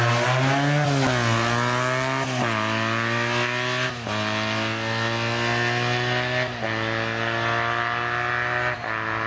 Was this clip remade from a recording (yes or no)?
no